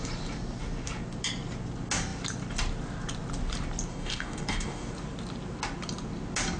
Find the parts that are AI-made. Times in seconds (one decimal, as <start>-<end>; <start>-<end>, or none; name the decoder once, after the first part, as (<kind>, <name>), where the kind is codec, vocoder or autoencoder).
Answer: 3.9-4.9 (codec, DAC)